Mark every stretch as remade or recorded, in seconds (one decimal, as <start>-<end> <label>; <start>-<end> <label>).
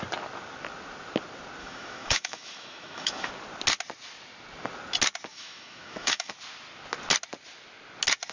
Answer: 0.0-1.6 recorded; 1.6-3.3 remade; 3.3-5.3 recorded; 5.3-6.3 remade; 6.3-8.3 recorded